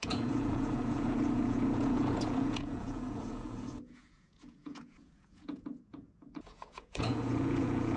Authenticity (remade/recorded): remade